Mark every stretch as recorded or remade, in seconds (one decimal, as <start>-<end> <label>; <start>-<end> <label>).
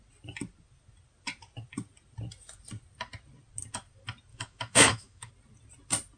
0.0-4.3 recorded; 4.3-5.3 remade; 5.3-6.2 recorded